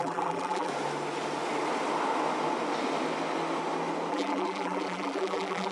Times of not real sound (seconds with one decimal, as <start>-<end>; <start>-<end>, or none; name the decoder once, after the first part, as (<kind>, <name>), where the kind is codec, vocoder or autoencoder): 0.0-0.7 (vocoder, BigVGAN v2); 4.1-5.7